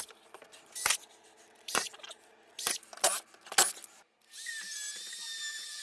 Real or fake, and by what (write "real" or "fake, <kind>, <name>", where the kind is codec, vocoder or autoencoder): real